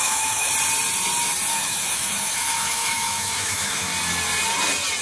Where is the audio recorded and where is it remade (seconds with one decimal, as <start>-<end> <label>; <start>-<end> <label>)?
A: 0.0-0.5 remade; 0.5-1.5 recorded; 1.5-3.9 remade; 3.9-5.0 recorded